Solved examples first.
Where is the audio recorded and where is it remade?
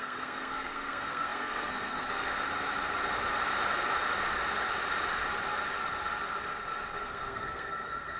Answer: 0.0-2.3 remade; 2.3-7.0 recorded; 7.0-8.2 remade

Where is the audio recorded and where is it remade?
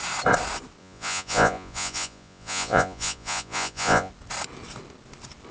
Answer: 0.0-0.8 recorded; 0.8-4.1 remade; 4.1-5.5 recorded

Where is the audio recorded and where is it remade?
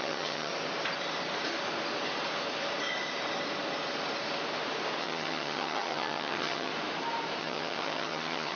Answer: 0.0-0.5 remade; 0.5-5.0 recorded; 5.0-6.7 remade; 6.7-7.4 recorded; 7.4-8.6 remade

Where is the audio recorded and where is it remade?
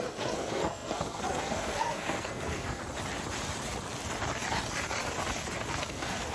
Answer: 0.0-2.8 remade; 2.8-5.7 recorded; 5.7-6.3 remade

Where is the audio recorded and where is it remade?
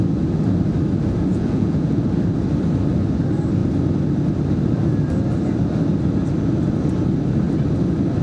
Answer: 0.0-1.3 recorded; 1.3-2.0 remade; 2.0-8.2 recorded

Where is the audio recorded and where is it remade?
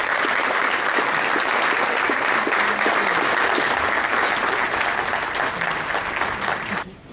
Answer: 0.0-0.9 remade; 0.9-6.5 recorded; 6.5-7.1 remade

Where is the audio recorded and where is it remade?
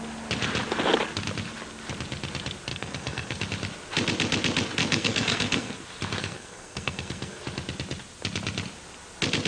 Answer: 0.0-2.7 recorded; 2.7-3.4 remade; 3.4-4.8 recorded; 4.8-5.8 remade; 5.8-6.2 recorded; 6.2-7.4 remade; 7.4-9.5 recorded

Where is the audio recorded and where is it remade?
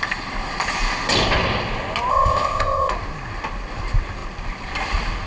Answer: 0.0-2.1 recorded; 2.1-2.9 remade; 2.9-5.3 recorded